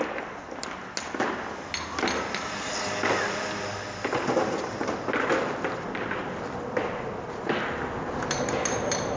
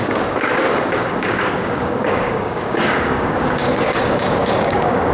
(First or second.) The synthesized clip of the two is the second